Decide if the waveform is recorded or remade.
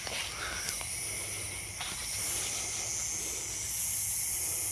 recorded